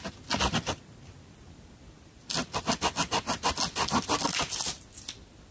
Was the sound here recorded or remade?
recorded